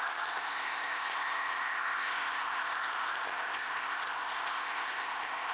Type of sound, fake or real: fake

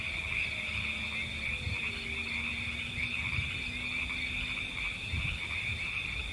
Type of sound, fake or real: real